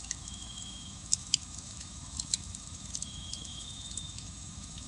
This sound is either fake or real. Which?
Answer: fake